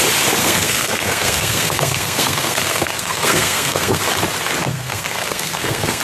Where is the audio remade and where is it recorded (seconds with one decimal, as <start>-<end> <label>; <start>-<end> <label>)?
0.0-0.4 recorded; 0.4-4.0 remade; 4.0-4.6 recorded; 4.6-6.0 remade